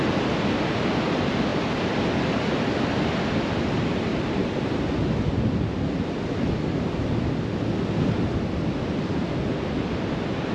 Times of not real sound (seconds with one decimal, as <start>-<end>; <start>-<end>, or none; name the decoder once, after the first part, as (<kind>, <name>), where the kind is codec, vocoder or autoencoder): 4.1-4.9 (vocoder, BigVGAN v2)